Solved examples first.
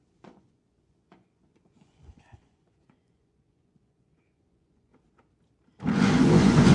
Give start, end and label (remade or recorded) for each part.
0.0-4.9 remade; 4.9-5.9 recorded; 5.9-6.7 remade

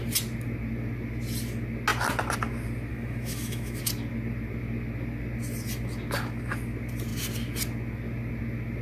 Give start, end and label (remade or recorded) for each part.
0.0-2.9 recorded; 2.9-3.8 remade; 3.8-8.8 recorded

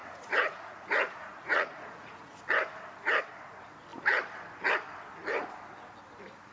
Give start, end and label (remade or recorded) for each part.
0.0-2.4 remade; 2.4-6.5 recorded

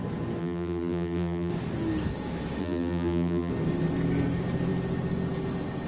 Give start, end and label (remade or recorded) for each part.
0.0-0.4 recorded; 0.4-1.5 remade; 1.5-2.6 recorded; 2.6-3.5 remade; 3.5-5.9 recorded

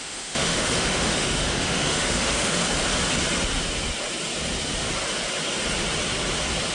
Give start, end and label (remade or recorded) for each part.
0.0-2.6 remade; 2.6-6.7 recorded